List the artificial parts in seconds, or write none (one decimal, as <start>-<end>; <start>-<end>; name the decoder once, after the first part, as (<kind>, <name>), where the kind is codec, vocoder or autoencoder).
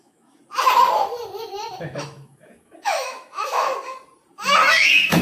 0.0-0.4 (autoencoder, DAC-VAE); 1.4-3.7; 4.7-5.2